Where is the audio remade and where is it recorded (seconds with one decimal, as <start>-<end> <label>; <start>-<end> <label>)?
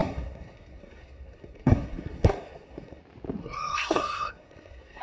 0.0-3.0 remade; 3.0-3.4 recorded; 3.4-5.0 remade